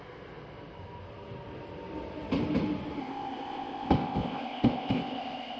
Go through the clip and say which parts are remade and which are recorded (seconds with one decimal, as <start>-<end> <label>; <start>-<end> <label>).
0.0-3.0 recorded; 3.0-5.6 remade

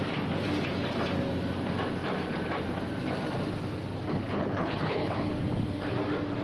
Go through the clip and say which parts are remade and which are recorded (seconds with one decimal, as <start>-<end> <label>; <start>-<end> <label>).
0.0-4.1 recorded; 4.1-5.3 remade; 5.3-6.4 recorded